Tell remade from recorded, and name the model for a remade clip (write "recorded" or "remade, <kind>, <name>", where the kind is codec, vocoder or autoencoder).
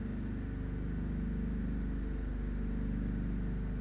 recorded